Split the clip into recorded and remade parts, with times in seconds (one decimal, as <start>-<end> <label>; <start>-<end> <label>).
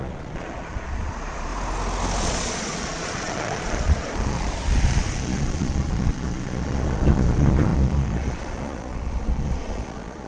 0.0-1.5 remade; 1.5-2.2 recorded; 2.2-10.3 remade